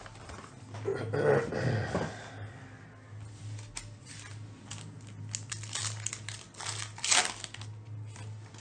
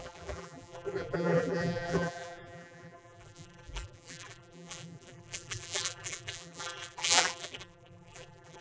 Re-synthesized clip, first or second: second